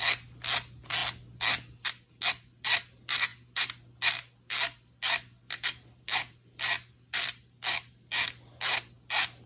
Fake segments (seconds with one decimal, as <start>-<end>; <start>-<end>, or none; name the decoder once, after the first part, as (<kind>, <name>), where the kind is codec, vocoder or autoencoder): none